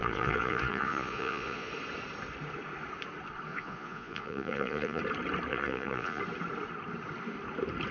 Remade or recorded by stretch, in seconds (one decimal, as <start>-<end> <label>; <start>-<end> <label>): 0.0-1.7 remade; 1.7-3.5 recorded; 3.5-5.0 remade; 5.0-5.5 recorded; 5.5-6.2 remade; 6.2-7.9 recorded